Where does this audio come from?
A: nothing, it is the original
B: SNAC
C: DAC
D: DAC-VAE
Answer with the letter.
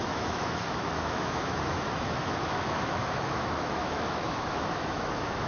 D